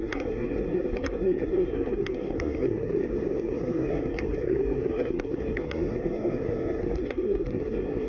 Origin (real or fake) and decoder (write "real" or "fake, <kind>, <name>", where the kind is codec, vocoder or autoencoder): fake, codec, SNAC